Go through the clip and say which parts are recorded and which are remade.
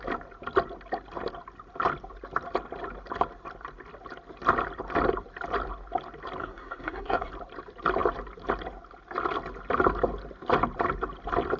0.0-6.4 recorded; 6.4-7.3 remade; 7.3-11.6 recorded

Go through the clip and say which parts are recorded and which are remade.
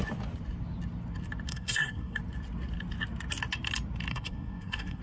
0.0-1.5 recorded; 1.5-2.2 remade; 2.2-4.1 recorded; 4.1-5.0 remade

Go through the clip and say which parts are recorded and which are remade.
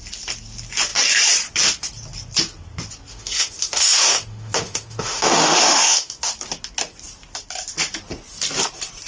0.0-3.1 recorded; 3.1-6.3 remade; 6.3-9.1 recorded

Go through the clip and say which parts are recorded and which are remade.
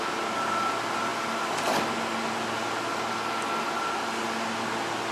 0.0-5.1 recorded